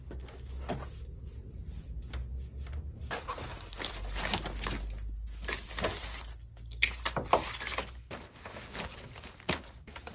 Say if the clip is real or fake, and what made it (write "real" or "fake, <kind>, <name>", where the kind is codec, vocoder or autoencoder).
real